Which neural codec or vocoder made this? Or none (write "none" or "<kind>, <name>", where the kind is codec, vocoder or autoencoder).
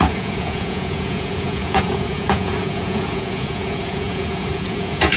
vocoder, Vocos